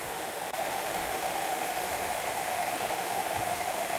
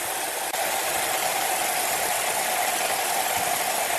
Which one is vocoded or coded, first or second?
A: first